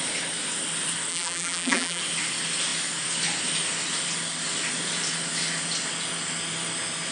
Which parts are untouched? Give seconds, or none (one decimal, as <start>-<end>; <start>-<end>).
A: 0.0-1.1; 2.0-7.1